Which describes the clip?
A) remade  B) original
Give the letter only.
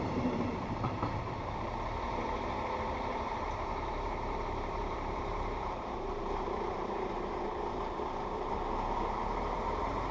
A